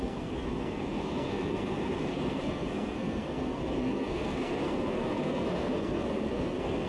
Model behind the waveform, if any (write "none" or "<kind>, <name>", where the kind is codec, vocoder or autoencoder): codec, SNAC